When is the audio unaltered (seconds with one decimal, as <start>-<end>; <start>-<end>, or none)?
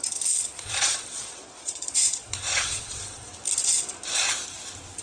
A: 0.0-0.5; 3.3-5.0